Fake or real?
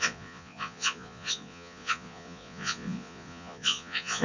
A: fake